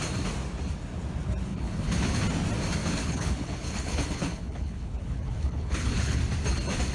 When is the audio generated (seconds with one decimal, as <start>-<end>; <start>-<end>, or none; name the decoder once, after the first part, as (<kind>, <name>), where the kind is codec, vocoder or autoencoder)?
1.5-2.2 (codec, HILCodec); 2.8-6.2